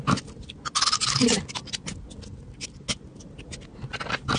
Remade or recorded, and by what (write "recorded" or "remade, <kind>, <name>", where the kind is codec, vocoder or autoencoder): recorded